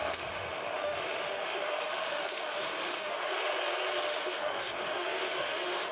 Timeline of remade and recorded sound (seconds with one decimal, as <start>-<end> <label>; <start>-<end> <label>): 0.0-3.4 remade; 3.4-4.1 recorded; 4.1-5.9 remade